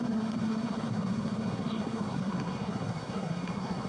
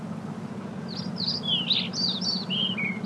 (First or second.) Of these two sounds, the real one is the second